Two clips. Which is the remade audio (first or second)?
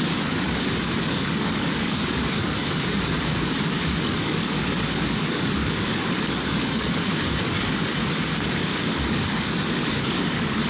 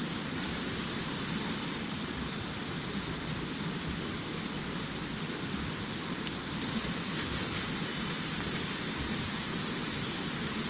first